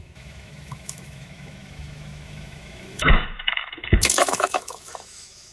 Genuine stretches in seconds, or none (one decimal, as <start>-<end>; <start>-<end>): none